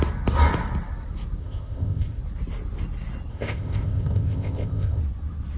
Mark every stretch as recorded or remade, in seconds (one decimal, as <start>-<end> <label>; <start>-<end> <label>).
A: 0.0-1.4 recorded; 1.4-2.2 remade; 2.2-3.3 recorded; 3.3-5.0 remade; 5.0-5.6 recorded